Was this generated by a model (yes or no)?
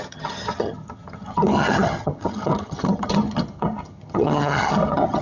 yes